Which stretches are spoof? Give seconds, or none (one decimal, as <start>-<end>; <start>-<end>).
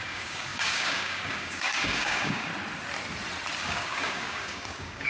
0.0-2.5; 3.6-5.1